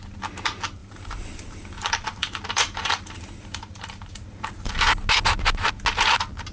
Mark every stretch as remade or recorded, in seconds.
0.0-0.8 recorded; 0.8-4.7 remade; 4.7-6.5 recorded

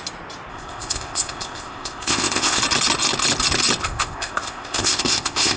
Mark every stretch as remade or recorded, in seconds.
0.0-0.5 recorded; 0.5-2.6 remade; 2.6-3.8 recorded; 3.8-5.6 remade

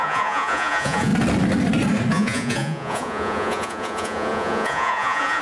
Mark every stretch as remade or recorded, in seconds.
0.0-1.1 remade; 1.1-2.1 recorded; 2.1-5.4 remade